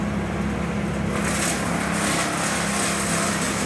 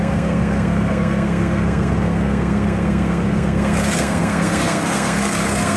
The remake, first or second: second